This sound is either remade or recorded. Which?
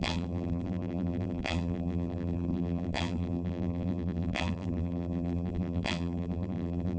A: remade